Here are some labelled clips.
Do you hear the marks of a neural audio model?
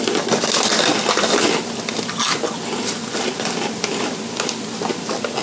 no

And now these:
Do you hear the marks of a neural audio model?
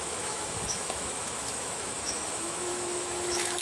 yes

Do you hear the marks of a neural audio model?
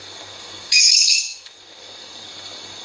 yes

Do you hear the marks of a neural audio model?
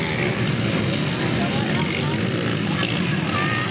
no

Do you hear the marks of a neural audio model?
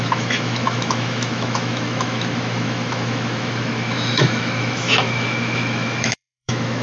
yes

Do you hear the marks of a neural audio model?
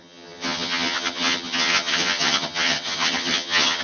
yes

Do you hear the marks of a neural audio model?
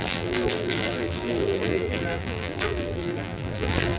yes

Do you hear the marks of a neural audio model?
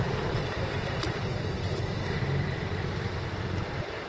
no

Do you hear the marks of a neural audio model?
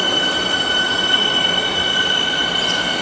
no